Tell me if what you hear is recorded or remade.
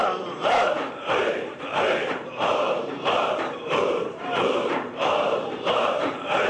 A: remade